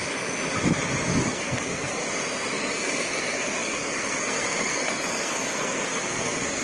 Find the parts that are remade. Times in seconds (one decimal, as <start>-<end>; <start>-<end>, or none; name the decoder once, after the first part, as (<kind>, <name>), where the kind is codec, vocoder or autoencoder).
1.2-2.0 (codec, SNAC); 2.7-6.6